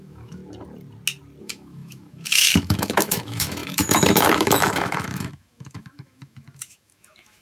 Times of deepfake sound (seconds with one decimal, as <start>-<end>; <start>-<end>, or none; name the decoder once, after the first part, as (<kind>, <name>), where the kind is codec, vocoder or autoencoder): 0.0-0.4 (autoencoder, DAC-VAE); 1.4-7.4